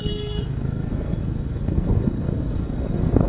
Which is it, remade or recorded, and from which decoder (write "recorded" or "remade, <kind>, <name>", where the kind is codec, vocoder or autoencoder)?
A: remade, codec, SNAC